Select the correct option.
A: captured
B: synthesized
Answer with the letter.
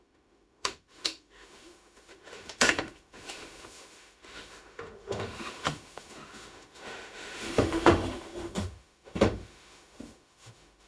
B